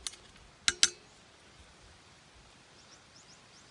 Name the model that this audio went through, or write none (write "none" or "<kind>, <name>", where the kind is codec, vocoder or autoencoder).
none